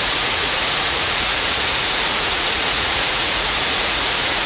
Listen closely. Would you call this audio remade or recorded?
remade